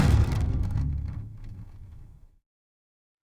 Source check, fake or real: fake